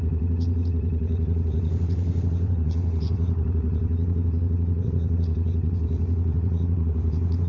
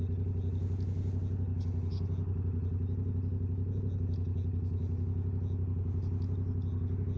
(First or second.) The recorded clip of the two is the second